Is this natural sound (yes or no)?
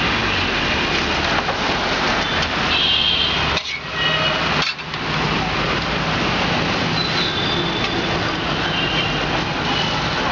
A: yes